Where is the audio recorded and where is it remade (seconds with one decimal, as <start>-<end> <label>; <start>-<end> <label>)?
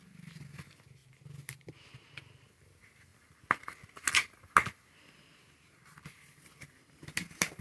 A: 0.0-3.1 recorded; 3.1-4.1 remade; 4.1-7.6 recorded